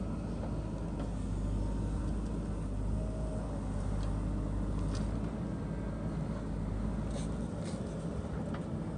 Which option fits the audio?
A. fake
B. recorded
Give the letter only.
B